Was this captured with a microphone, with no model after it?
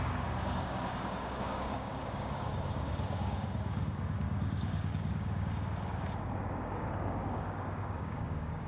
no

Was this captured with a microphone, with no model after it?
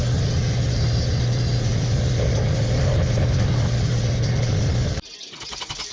yes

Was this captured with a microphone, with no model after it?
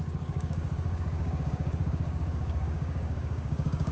no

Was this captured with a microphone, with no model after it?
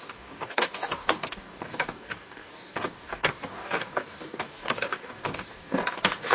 no